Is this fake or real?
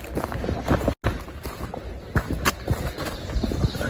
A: real